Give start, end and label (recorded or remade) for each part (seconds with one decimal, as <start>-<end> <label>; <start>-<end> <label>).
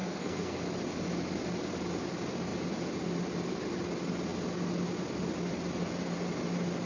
0.0-0.6 remade; 0.6-6.9 recorded